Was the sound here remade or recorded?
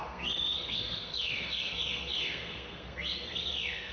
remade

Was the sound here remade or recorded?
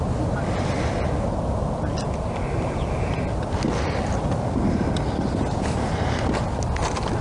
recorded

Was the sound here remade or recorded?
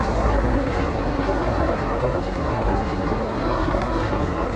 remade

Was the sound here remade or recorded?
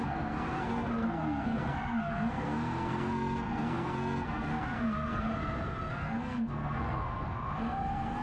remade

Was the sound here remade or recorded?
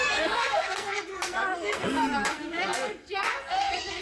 remade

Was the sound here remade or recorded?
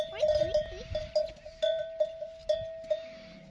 recorded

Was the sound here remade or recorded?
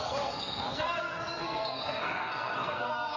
remade